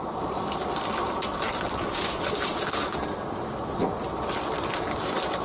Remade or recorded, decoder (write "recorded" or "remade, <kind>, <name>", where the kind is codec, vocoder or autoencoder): recorded